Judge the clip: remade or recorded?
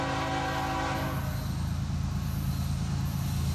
recorded